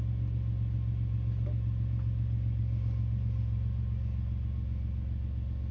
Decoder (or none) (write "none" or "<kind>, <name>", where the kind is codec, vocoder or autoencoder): none